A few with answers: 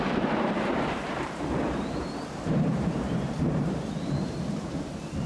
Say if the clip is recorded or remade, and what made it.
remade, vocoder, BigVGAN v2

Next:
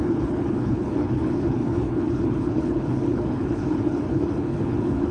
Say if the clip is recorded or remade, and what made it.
remade, codec, HILCodec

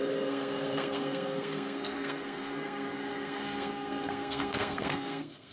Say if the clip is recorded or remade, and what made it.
remade, codec, SNAC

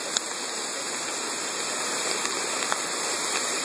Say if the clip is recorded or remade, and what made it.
recorded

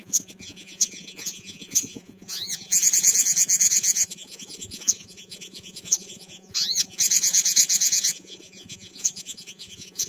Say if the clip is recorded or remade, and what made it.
remade, vocoder, Vocos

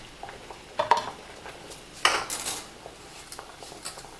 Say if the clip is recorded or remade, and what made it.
recorded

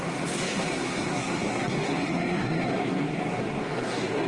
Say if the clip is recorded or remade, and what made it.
remade, codec, SNAC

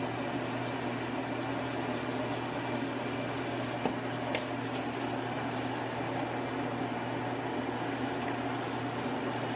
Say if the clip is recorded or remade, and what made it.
recorded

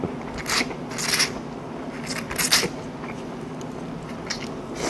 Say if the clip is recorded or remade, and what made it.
recorded